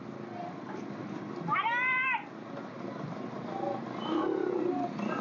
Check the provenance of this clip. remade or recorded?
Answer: recorded